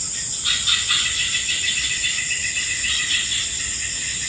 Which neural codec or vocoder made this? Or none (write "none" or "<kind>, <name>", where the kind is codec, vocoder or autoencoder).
none